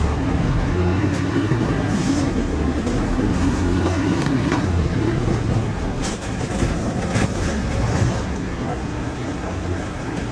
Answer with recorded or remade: remade